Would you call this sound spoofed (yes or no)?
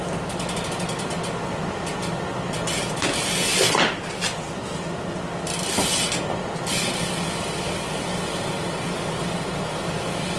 no